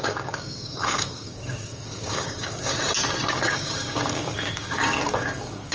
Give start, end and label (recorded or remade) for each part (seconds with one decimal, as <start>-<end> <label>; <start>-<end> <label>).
0.0-2.7 remade; 2.7-3.3 recorded; 3.3-5.7 remade